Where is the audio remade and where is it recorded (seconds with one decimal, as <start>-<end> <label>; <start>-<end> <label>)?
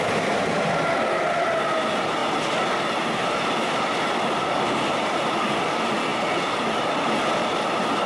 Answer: 0.0-2.2 remade; 2.2-3.8 recorded; 3.8-6.1 remade; 6.1-7.3 recorded; 7.3-8.1 remade